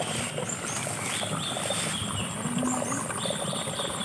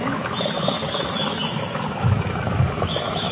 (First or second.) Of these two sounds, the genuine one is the first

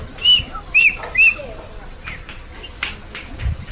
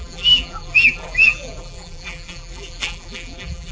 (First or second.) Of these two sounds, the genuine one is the first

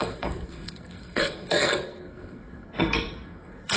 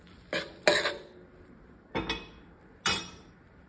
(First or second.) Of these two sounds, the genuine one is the second